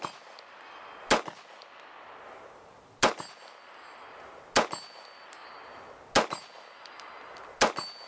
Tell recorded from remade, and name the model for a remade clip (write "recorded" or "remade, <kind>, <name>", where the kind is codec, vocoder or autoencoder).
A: recorded